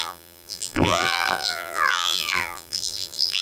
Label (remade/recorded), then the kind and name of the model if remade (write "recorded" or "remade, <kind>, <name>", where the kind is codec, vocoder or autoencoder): remade, vocoder, BigVGAN v2